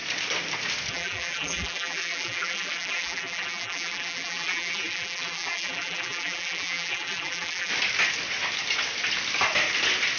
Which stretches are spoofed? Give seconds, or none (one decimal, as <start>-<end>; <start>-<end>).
0.9-7.7